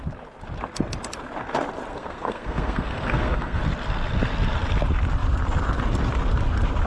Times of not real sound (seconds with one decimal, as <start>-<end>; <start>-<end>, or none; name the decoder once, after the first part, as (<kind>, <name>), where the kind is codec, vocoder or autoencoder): 1.9-3.6 (codec, SNAC)